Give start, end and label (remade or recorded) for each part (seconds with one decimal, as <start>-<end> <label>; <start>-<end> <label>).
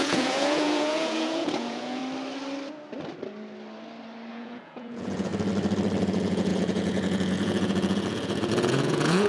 0.0-2.0 remade; 2.0-4.3 recorded; 4.3-5.3 remade; 5.3-6.0 recorded; 6.0-9.3 remade